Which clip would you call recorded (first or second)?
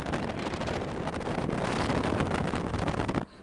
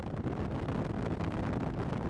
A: second